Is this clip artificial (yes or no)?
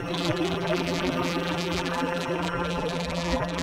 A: yes